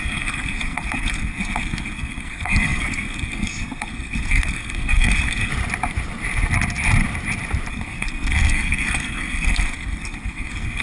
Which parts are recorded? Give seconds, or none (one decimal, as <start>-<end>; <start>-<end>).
5.5-7.7